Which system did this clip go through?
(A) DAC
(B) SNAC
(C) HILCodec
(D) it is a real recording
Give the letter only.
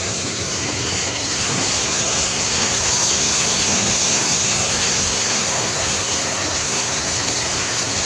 B